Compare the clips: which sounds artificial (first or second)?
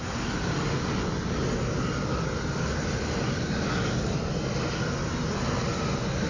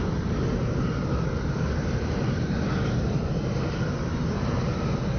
second